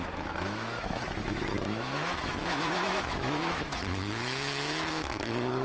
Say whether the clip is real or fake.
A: fake